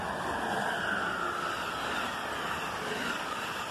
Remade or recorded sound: recorded